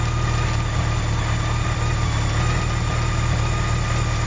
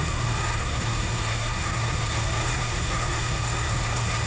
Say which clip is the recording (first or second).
first